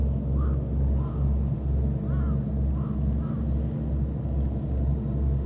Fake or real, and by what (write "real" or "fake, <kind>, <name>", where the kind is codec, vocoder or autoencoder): real